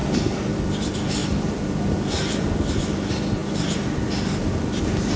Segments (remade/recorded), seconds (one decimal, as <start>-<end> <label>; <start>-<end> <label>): 0.0-0.5 recorded; 0.5-5.2 remade